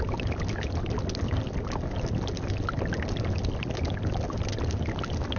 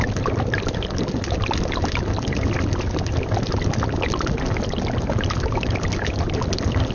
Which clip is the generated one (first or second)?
second